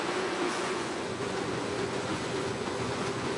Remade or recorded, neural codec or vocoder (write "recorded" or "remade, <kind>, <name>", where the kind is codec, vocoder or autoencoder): remade, vocoder, Vocos